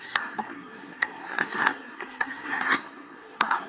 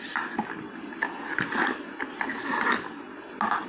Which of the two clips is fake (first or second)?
first